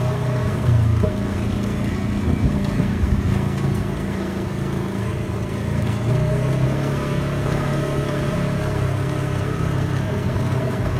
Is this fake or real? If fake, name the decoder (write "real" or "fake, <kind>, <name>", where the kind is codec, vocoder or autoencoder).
fake, codec, SNAC